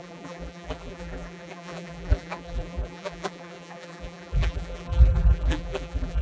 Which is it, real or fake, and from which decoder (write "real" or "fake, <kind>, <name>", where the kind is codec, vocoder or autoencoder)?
fake, vocoder, BigVGAN v2